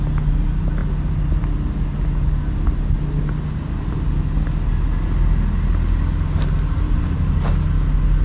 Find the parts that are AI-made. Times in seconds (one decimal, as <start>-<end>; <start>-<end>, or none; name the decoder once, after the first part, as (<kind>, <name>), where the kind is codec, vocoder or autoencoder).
none

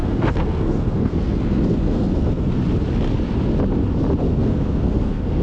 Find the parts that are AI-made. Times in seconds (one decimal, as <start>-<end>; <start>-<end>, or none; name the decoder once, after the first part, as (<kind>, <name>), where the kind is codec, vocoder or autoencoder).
0.0-2.6 (codec, SNAC); 4.2-5.4

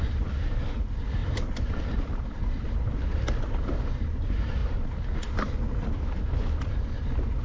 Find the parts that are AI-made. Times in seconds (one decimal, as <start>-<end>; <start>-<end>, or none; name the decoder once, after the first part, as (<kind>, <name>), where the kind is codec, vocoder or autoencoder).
0.0-4.6 (vocoder, BigVGAN v2)

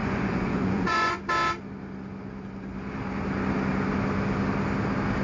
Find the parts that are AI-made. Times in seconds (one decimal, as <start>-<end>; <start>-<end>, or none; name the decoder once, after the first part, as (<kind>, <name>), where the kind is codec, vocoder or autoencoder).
0.0-1.2 (vocoder, Vocos)

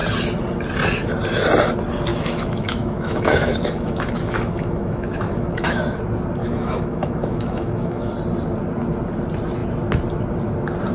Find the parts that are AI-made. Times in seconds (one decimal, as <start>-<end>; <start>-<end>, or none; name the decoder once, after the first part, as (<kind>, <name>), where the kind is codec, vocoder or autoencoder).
2.1-5.8 (autoencoder, DAC-VAE); 6.4-8.1